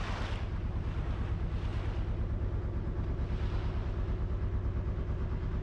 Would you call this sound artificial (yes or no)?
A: no